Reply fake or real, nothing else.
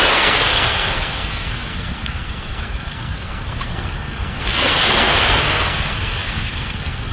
fake